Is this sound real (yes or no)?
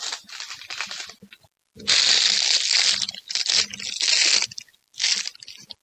yes